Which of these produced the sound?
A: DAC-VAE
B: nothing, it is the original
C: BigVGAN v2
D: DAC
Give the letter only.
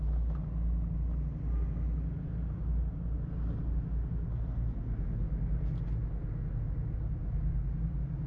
B